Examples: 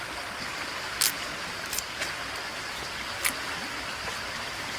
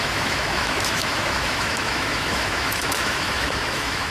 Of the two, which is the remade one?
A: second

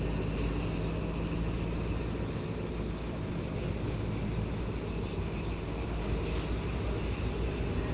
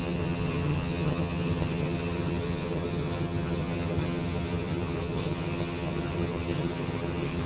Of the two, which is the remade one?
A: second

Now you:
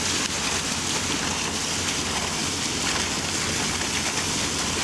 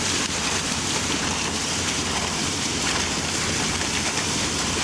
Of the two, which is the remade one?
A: second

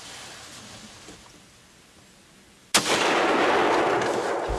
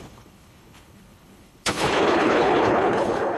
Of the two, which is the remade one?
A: second